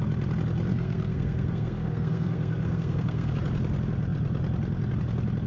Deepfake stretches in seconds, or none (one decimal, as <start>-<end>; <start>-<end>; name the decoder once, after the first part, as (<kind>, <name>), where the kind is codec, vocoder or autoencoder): 0.7-3.3 (codec, SNAC)